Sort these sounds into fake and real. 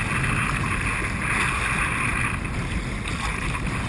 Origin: real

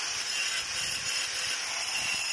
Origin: real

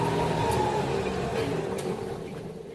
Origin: real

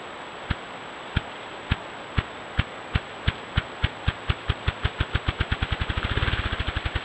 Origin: real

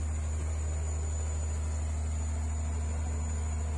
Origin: real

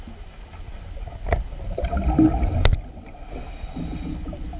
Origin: real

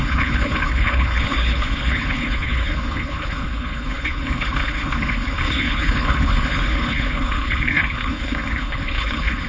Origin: fake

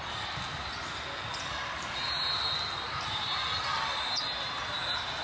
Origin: real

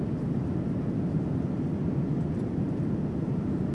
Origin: real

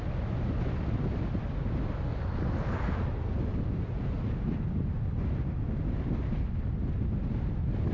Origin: real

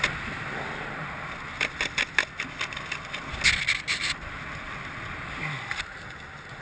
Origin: real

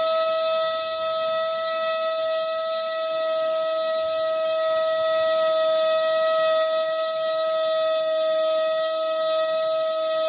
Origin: real